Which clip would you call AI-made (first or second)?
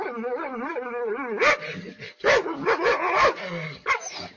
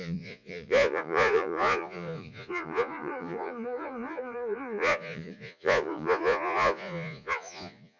second